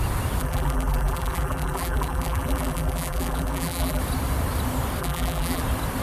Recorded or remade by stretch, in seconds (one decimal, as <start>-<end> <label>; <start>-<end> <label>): 0.0-0.4 recorded; 0.4-4.0 remade; 4.0-5.0 recorded; 5.0-5.6 remade; 5.6-6.0 recorded